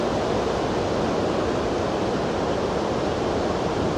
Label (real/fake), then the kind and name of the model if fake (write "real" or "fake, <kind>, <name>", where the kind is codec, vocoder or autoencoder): real